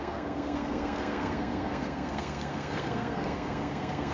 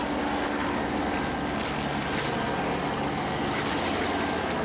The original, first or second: second